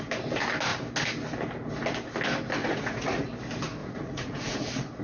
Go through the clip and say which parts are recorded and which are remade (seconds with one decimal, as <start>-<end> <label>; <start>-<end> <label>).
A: 0.0-2.6 recorded; 2.6-3.3 remade; 3.3-3.8 recorded; 3.8-5.0 remade

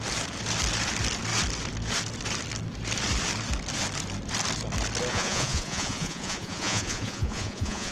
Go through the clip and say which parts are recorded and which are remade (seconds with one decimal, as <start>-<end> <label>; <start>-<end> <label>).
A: 0.0-5.1 recorded; 5.1-7.9 remade

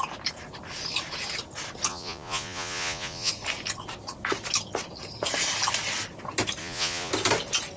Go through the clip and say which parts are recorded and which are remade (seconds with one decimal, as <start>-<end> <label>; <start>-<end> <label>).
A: 0.0-1.9 recorded; 1.9-3.3 remade; 3.3-6.6 recorded; 6.6-7.1 remade; 7.1-7.8 recorded

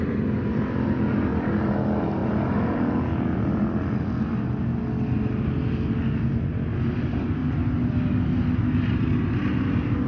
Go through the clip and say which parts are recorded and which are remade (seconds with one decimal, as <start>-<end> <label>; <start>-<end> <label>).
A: 0.0-10.1 recorded

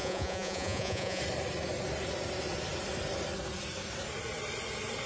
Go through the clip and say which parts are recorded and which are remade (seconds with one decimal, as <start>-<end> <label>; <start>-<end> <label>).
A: 0.0-1.2 remade; 1.2-5.1 recorded

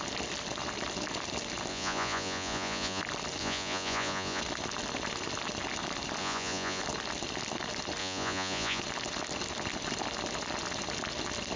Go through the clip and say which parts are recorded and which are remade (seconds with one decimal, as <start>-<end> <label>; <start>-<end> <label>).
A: 0.0-1.7 recorded; 1.7-3.0 remade; 3.0-3.4 recorded; 3.4-4.4 remade; 4.4-6.2 recorded; 6.2-6.8 remade; 6.8-8.0 recorded; 8.0-8.8 remade; 8.8-11.6 recorded

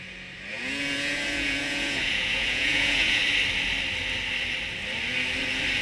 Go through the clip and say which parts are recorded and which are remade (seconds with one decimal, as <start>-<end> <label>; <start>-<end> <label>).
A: 0.0-0.5 recorded; 0.5-3.2 remade; 3.2-5.8 recorded